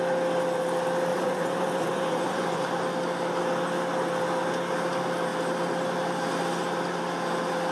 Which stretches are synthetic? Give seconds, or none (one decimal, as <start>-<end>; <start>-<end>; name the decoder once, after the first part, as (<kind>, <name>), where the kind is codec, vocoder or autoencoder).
1.1-2.6 (vocoder, Vocos)